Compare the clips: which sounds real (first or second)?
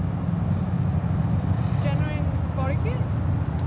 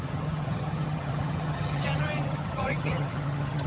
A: first